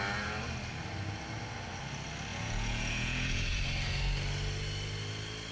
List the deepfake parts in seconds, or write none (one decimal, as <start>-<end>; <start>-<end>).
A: 2.3-3.6